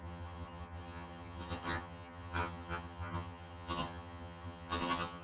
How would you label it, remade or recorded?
remade